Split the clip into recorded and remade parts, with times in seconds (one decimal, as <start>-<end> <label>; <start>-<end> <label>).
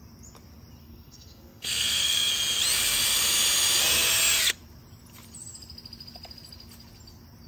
0.0-0.8 recorded; 0.8-2.3 remade; 2.3-7.5 recorded